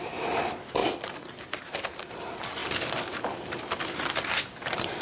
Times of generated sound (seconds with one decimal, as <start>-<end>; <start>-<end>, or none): none